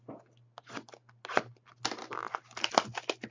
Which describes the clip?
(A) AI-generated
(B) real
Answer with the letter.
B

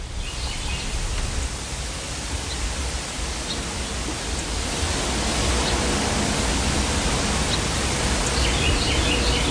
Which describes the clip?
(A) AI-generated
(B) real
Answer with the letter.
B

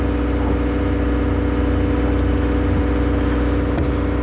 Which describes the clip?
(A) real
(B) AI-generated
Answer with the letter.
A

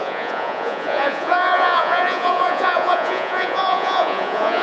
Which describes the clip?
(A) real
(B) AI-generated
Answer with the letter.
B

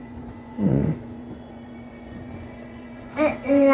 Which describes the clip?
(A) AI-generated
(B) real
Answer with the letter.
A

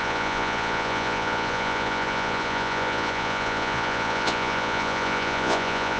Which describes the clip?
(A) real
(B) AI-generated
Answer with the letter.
B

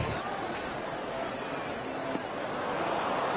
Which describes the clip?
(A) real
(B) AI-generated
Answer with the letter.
A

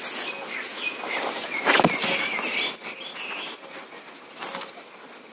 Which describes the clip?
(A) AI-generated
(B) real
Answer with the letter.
B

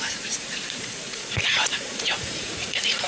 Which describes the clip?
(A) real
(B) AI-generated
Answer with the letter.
B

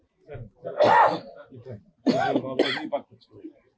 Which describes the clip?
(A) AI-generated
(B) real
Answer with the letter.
B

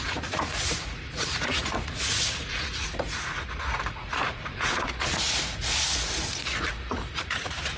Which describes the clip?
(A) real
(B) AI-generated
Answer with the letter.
B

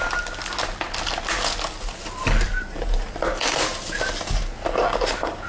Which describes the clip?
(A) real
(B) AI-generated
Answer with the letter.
A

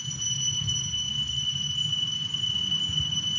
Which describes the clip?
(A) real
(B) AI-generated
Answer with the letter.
A